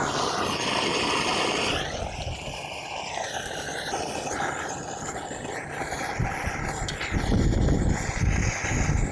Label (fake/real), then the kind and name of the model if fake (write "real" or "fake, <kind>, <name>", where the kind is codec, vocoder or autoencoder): real